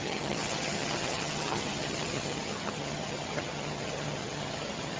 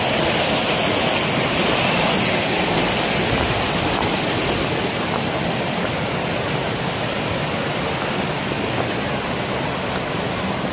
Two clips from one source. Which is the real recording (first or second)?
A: second